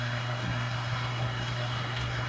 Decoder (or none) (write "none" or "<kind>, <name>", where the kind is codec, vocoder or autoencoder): codec, SNAC